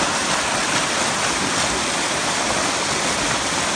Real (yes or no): yes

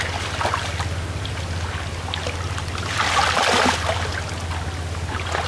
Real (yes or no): yes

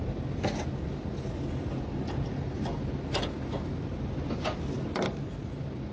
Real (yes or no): yes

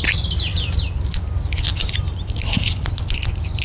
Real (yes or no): yes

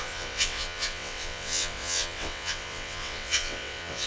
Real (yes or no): no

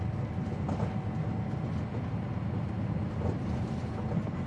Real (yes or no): yes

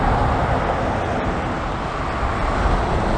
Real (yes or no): yes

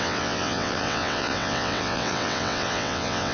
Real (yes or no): no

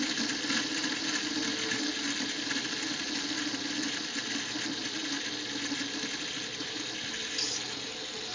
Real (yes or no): yes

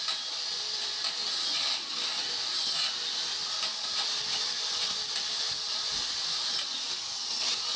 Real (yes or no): yes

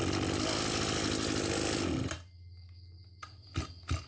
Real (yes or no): yes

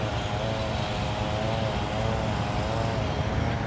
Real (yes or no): yes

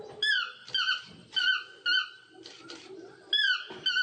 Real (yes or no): yes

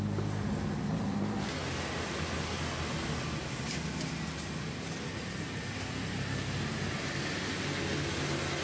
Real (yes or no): yes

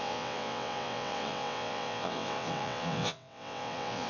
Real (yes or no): no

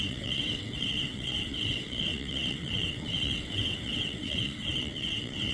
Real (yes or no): no